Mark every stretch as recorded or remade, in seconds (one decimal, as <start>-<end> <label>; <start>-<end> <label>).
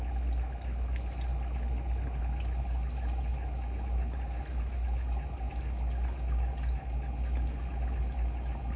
0.0-8.8 recorded